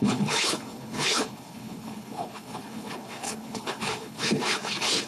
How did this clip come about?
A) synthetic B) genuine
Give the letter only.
A